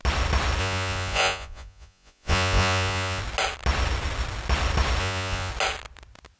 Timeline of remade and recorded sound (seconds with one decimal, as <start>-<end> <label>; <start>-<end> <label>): 0.0-0.6 recorded; 0.6-3.2 remade; 3.2-5.0 recorded; 5.0-5.5 remade; 5.5-6.4 recorded

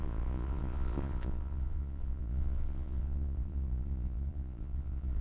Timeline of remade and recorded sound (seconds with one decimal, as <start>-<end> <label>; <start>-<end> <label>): 0.0-5.2 remade

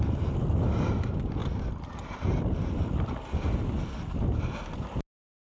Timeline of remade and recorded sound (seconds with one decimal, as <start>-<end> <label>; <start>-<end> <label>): 0.0-5.6 recorded

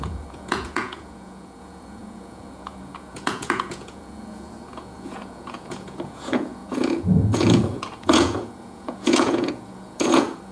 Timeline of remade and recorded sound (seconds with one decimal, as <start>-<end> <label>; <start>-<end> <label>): 0.0-10.5 remade

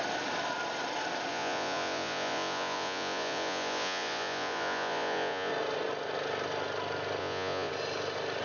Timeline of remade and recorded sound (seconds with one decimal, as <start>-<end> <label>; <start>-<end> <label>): 0.0-1.3 recorded; 1.3-5.5 remade; 5.5-7.2 recorded; 7.2-7.7 remade; 7.7-8.4 recorded

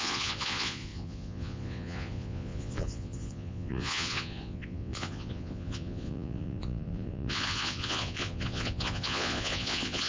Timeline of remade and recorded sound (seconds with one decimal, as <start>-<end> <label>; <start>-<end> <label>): 0.0-10.1 remade

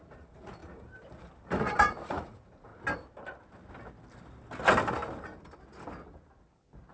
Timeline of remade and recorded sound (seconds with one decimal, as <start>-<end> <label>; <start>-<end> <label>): 0.0-0.6 remade; 0.6-1.6 recorded; 1.6-2.7 remade; 2.7-6.9 recorded

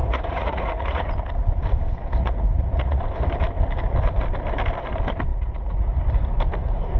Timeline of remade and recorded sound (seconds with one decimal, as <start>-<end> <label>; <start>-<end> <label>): 0.0-1.1 remade; 1.1-2.2 recorded; 2.2-3.0 remade; 3.0-5.3 recorded; 5.3-6.0 remade; 6.0-7.0 recorded